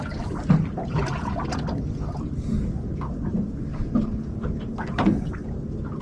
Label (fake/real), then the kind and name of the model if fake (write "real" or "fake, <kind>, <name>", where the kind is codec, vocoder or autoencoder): real